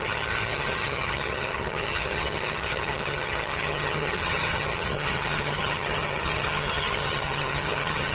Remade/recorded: remade